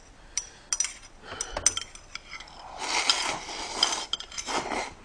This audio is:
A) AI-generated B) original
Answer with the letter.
B